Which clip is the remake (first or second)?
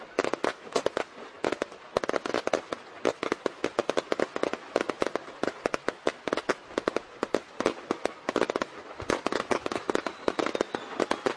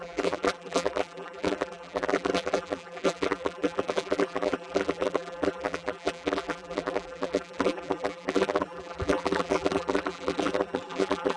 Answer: second